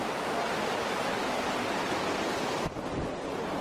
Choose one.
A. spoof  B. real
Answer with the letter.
B